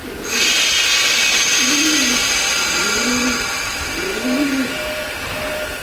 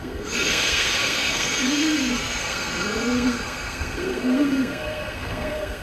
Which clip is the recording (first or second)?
first